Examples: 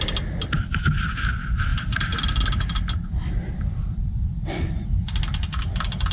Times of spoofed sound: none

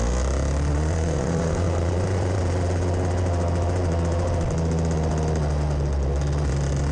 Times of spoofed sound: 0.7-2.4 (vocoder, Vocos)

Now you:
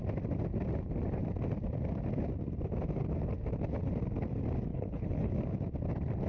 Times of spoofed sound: 4.7-5.3 (codec, HILCodec)

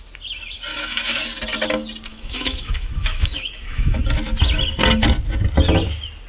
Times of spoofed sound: 0.7-1.2 (autoencoder, DAC-VAE); 2.1-4.0